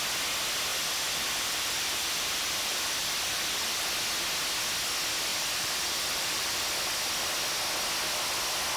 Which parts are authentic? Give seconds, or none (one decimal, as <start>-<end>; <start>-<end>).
0.0-0.7; 3.9-5.3; 6.6-8.8